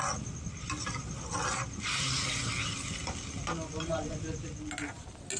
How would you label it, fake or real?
real